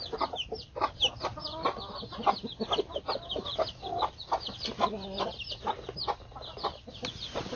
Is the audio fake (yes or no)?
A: no